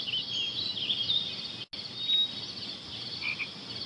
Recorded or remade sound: recorded